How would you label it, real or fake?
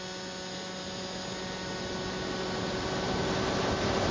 real